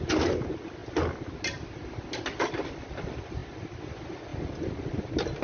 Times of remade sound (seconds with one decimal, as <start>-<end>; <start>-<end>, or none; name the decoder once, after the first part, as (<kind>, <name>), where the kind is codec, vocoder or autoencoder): none